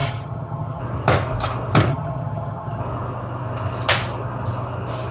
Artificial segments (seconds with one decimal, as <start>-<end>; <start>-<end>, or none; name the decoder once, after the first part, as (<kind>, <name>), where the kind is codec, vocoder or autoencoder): 0.0-0.8 (vocoder, HiFi-GAN); 1.9-2.8